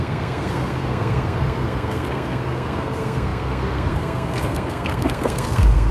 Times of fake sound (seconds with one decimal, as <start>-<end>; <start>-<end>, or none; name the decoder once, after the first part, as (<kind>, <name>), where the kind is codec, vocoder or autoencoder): 0.0-5.9 (codec, SNAC)